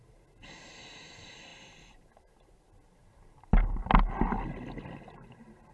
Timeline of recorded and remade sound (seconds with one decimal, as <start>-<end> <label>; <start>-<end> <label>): 0.0-5.7 recorded